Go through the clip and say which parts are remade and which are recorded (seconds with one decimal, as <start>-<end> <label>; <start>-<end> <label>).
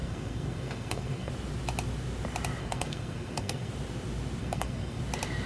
0.0-1.3 remade; 1.3-2.6 recorded; 2.6-3.7 remade; 3.7-4.4 recorded; 4.4-5.0 remade; 5.0-5.5 recorded